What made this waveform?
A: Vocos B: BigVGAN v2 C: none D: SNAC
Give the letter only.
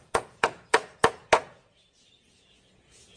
A